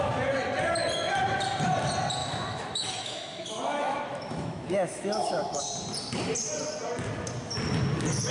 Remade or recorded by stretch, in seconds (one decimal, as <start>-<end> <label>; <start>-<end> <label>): 0.0-2.2 recorded; 2.2-5.6 remade; 5.6-8.3 recorded